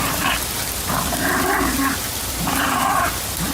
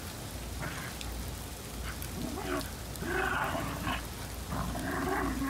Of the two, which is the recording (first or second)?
second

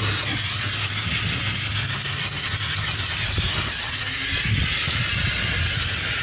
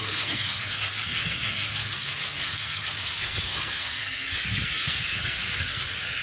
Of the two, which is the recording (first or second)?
first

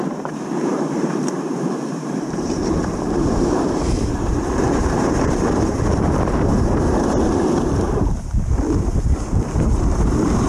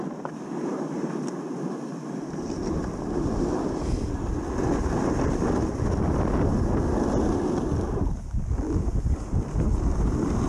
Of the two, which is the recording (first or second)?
second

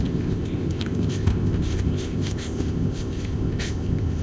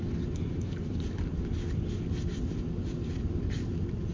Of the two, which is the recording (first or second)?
second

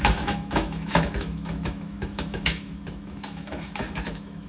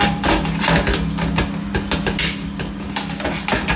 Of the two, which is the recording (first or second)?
second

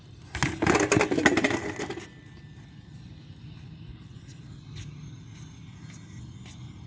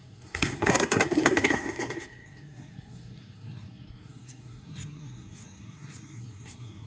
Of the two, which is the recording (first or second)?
first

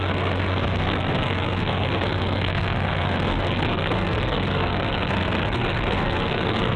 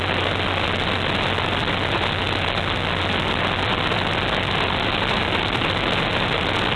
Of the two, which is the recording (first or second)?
second